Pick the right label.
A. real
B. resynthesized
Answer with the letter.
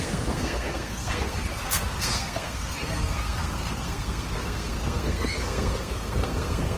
B